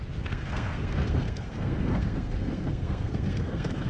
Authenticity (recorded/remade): remade